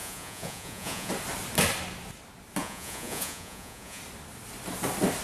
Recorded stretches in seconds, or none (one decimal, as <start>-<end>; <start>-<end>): 1.1-2.6; 4.0-5.2